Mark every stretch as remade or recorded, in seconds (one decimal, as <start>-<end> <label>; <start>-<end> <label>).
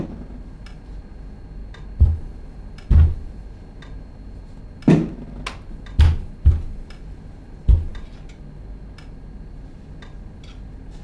0.0-11.0 recorded